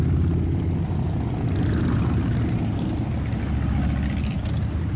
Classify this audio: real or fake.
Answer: real